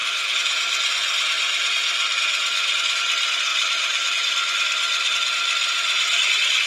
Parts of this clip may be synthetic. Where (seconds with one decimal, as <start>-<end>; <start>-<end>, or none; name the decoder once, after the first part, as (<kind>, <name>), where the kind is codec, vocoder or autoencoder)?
0.0-3.0 (vocoder, BigVGAN v2); 3.5-4.3; 5.6-6.3